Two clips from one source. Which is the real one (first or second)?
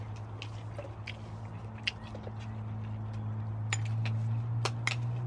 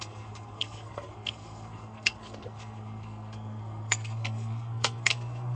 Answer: first